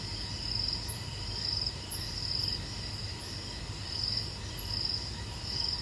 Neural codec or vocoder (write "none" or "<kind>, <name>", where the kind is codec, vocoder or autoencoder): none